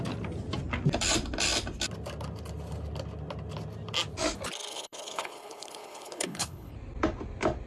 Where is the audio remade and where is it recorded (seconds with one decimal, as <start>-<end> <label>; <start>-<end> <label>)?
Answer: 0.0-4.7 recorded; 4.7-6.7 remade; 6.7-7.7 recorded

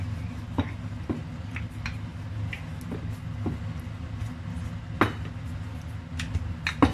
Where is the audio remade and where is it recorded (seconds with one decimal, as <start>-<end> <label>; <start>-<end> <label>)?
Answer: 0.0-6.9 recorded

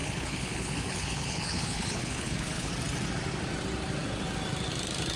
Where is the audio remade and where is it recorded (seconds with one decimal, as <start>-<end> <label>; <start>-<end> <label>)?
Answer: 0.0-2.7 remade; 2.7-5.2 recorded

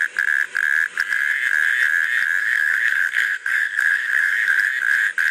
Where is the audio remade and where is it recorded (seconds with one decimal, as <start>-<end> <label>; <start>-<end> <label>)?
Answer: 0.0-2.4 recorded; 2.4-4.5 remade; 4.5-5.3 recorded